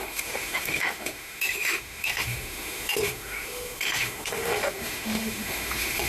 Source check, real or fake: fake